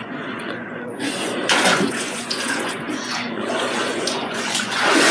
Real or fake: fake